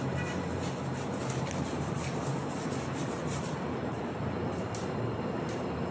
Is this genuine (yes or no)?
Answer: no